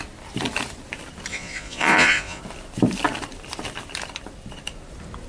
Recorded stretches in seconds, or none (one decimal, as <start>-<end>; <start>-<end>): 0.0-1.3; 2.4-5.3